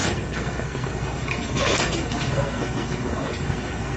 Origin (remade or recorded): remade